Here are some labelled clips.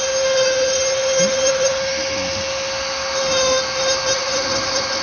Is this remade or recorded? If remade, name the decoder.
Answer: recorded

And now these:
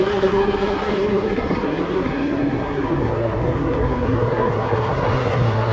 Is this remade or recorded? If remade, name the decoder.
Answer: remade, codec, SNAC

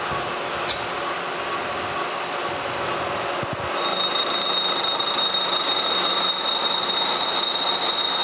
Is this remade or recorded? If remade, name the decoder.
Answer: recorded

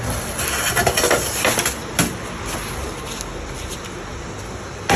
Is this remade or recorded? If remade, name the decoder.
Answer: recorded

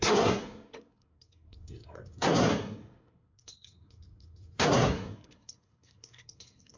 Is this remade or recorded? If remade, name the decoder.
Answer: remade, codec, SNAC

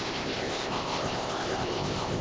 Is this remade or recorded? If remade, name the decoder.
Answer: remade, codec, ZipCodec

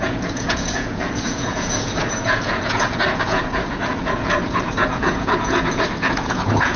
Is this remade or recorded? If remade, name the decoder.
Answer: remade, vocoder, Vocos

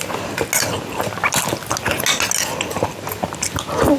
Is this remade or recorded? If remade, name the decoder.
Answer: recorded